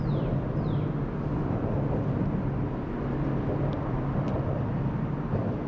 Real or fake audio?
real